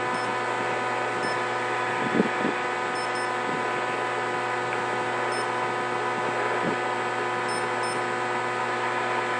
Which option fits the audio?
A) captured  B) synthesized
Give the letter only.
A